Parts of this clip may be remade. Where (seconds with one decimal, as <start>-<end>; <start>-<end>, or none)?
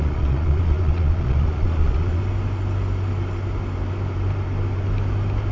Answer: 0.0-2.2